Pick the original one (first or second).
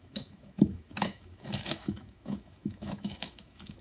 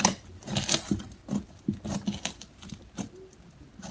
second